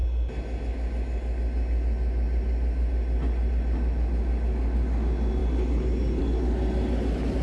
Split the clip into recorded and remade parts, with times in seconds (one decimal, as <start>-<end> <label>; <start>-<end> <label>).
0.0-7.4 recorded